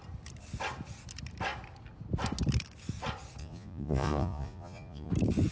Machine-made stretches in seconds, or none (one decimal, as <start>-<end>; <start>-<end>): 3.4-5.1